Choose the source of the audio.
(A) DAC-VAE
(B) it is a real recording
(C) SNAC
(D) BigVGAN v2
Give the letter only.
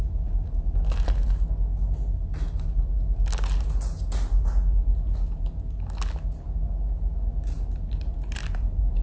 B